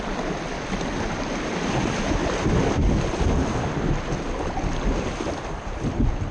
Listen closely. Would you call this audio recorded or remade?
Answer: recorded